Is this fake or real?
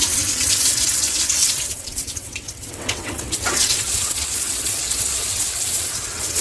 fake